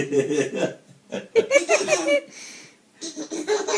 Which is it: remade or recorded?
remade